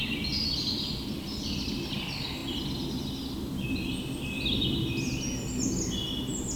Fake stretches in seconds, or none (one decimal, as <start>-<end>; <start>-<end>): 0.4-0.9